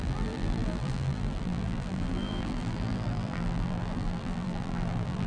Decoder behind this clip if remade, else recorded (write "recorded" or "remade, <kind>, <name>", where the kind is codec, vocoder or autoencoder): remade, vocoder, BigVGAN v2